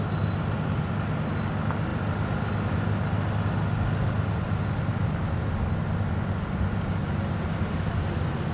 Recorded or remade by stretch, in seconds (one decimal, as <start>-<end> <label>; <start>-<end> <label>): 0.0-8.5 recorded